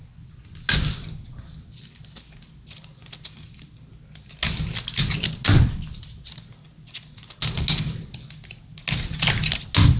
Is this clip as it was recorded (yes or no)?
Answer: yes